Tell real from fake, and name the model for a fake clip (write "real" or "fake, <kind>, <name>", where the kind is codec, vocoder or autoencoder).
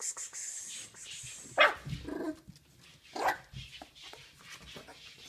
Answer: real